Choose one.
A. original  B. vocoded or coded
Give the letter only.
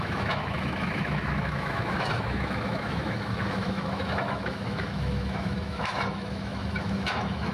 B